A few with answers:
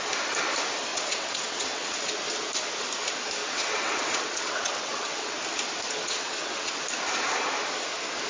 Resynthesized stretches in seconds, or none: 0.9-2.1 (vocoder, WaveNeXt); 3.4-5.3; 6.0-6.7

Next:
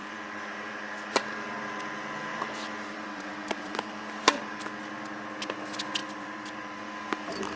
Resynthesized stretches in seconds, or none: 0.0-1.6 (vocoder, BigVGAN v2); 2.3-3.9; 6.0-6.8

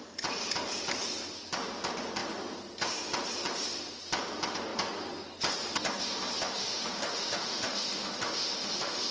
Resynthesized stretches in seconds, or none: 6.6-9.1 (autoencoder, DAC-VAE)

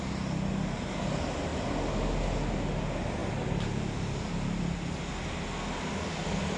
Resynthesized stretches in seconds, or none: none